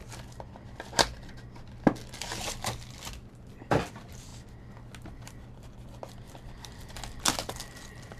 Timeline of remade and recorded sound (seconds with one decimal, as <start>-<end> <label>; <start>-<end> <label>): 0.0-3.9 recorded; 3.9-4.3 remade; 4.3-5.1 recorded; 5.1-8.2 remade